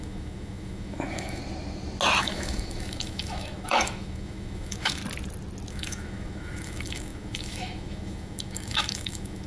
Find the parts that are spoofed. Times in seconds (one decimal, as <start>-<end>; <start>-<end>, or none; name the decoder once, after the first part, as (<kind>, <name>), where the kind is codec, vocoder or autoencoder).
0.0-1.4 (autoencoder, DAC-VAE); 2.2-5.0; 5.7-9.5